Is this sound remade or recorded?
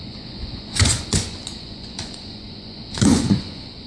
remade